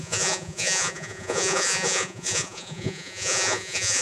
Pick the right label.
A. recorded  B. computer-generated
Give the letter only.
B